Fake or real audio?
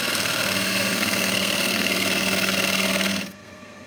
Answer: fake